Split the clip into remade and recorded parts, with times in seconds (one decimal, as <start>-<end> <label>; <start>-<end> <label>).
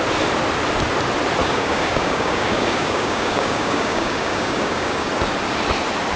0.0-1.4 recorded; 1.4-5.1 remade; 5.1-6.2 recorded